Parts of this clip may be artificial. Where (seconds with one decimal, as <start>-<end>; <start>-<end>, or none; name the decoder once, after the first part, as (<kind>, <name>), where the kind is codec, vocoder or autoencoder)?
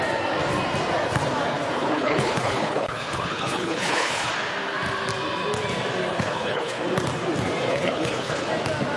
1.8-4.3 (codec, HILCodec); 6.1-6.8; 7.7-8.5